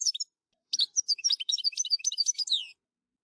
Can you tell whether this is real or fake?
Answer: fake